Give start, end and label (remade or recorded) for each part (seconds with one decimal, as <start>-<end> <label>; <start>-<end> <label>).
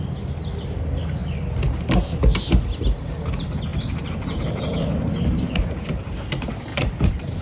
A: 0.0-3.7 recorded; 3.7-5.6 remade; 5.6-6.7 recorded; 6.7-7.4 remade